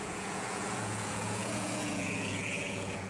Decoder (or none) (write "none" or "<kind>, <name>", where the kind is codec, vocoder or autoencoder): vocoder, Vocos